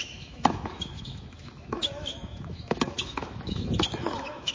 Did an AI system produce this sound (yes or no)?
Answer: yes